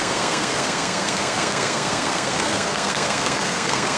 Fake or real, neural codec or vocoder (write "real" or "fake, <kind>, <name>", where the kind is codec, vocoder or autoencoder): fake, codec, SNAC